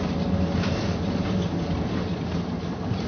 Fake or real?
real